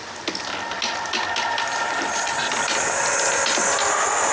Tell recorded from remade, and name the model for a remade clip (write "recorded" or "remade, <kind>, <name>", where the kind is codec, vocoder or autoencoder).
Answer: recorded